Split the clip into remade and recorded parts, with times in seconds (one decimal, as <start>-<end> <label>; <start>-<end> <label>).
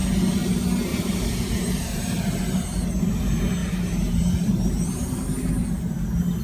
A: 0.0-0.9 recorded; 0.9-2.4 remade; 2.4-3.6 recorded; 3.6-5.5 remade; 5.5-6.4 recorded